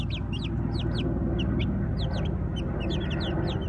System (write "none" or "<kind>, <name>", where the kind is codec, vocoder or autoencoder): none